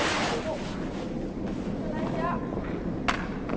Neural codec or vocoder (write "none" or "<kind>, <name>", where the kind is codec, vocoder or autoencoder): none